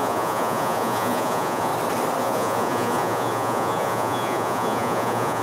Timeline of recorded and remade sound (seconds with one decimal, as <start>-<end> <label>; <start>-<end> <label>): 0.0-1.7 remade; 1.7-2.2 recorded; 2.2-5.4 remade